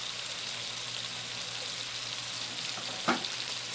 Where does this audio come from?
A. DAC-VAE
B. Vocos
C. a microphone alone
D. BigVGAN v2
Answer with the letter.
C